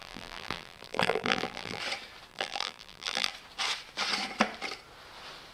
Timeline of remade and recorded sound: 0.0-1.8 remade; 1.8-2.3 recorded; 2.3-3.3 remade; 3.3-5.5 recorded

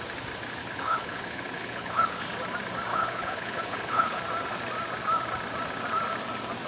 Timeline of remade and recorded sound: 0.0-0.6 recorded; 0.6-2.2 remade; 2.2-2.9 recorded; 2.9-4.2 remade; 4.2-6.7 recorded